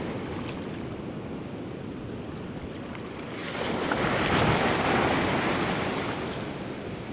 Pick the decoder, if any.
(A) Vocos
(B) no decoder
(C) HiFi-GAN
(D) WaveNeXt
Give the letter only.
B